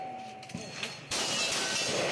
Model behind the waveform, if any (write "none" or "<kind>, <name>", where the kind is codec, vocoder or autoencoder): none